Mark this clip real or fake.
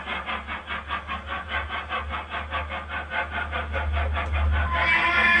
real